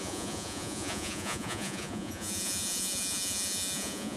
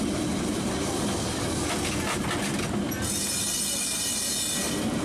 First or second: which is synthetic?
first